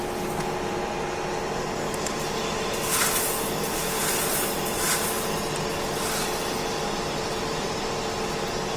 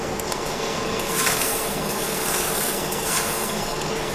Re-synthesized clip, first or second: second